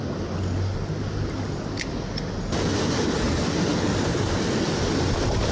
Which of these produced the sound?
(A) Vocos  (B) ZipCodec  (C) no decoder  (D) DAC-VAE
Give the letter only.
C